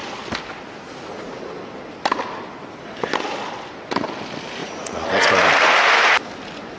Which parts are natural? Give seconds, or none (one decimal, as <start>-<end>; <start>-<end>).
0.0-4.6; 5.3-6.8